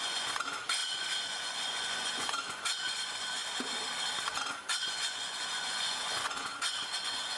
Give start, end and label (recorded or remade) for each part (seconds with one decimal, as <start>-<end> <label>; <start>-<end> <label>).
0.0-3.4 remade; 3.4-4.3 recorded; 4.3-7.4 remade